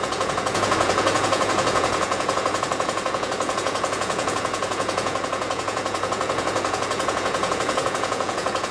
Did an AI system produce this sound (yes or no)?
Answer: yes